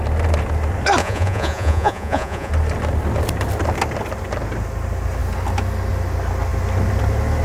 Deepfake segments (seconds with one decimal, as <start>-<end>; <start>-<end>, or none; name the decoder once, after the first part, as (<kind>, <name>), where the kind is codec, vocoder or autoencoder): 1.0-2.5 (vocoder, Vocos)